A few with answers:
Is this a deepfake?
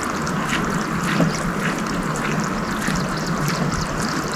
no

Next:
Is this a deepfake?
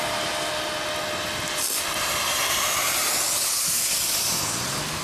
no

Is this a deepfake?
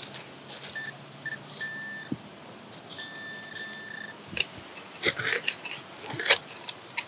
no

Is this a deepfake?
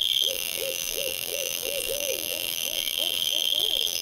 yes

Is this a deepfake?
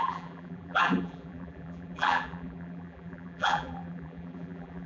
yes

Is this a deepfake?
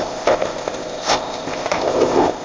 yes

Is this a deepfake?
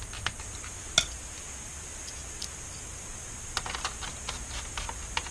no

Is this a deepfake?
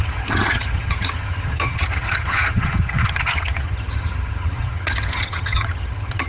yes